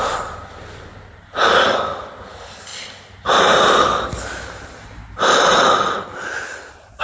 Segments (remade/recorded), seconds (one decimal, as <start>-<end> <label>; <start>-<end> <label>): 0.0-7.0 recorded